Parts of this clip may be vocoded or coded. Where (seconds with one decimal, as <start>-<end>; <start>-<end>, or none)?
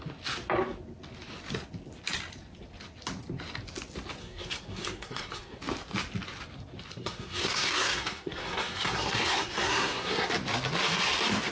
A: 4.2-5.6; 6.9-10.3